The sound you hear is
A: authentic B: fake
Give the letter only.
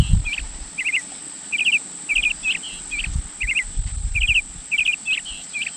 A